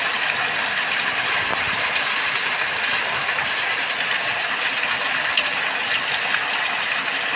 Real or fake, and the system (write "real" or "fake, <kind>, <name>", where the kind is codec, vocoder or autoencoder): real